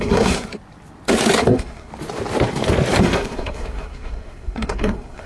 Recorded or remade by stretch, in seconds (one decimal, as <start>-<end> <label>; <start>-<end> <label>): 0.0-0.5 remade; 0.5-1.4 recorded; 1.4-1.9 remade; 1.9-3.0 recorded; 3.0-5.3 remade